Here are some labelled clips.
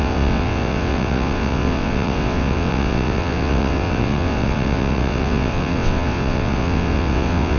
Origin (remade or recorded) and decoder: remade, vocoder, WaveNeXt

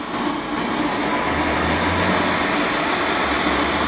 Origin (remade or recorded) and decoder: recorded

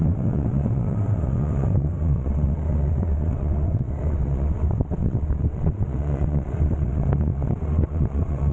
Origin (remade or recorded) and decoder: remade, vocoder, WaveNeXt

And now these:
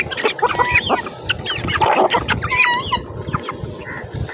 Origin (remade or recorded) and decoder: recorded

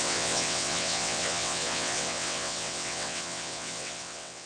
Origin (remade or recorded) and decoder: remade, vocoder, WaveNeXt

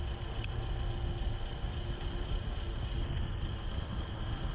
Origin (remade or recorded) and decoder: recorded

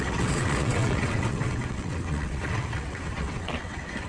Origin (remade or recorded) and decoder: remade, vocoder, WaveNeXt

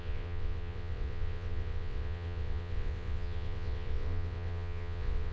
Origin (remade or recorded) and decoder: remade, vocoder, WaveNeXt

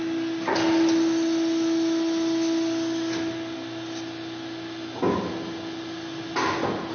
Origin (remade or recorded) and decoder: recorded